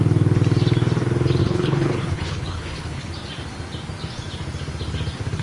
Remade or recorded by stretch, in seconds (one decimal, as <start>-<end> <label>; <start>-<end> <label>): 0.0-1.4 recorded; 1.4-3.1 remade; 3.1-5.4 recorded